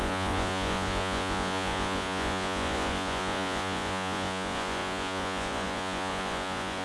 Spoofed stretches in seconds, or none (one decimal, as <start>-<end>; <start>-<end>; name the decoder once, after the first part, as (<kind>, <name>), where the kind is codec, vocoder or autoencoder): 0.0-6.8 (vocoder, Vocos)